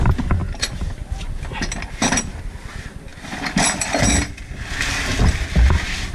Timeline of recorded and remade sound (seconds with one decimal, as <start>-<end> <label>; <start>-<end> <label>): 0.0-6.1 recorded